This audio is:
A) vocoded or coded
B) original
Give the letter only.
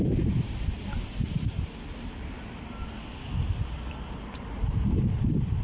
B